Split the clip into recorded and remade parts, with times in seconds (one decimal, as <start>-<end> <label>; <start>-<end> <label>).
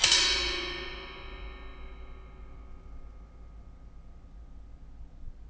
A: 0.0-5.5 recorded